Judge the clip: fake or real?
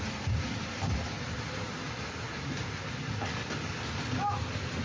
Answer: real